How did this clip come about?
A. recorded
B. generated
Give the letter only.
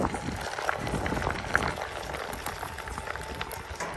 A